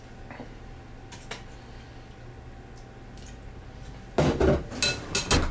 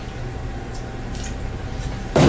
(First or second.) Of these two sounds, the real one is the first